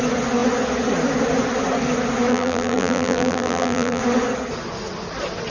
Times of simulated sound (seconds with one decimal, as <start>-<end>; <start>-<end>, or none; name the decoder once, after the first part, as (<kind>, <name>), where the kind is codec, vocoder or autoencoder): 2.3-4.0 (vocoder, BigVGAN v2)